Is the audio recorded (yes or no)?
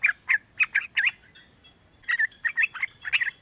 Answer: yes